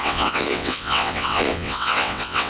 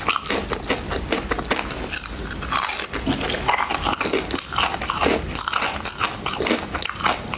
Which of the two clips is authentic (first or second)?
second